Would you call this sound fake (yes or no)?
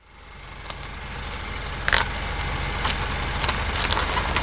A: no